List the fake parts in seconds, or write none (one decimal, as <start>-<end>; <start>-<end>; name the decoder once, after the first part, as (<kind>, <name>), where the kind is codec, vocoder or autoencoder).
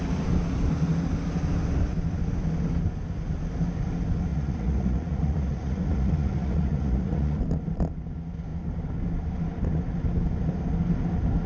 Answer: 4.3-7.4 (vocoder, Vocos)